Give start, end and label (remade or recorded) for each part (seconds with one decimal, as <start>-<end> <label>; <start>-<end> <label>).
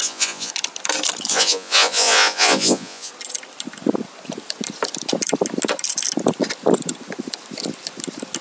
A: 0.0-0.5 remade; 0.5-1.3 recorded; 1.3-3.1 remade; 3.1-8.4 recorded